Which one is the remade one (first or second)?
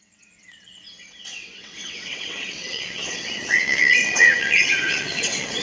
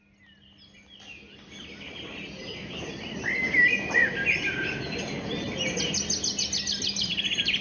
first